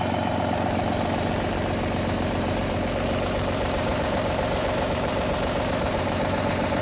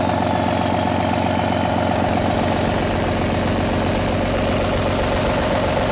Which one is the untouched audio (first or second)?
second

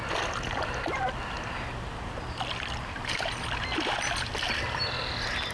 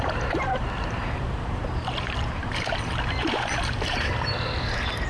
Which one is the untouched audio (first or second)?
first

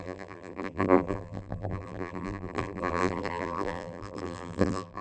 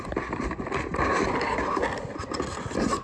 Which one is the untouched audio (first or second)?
second